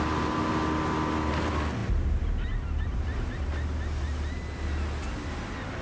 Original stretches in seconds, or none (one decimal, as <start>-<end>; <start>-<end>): 0.0-5.8